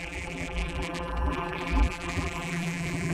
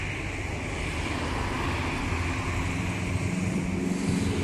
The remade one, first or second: first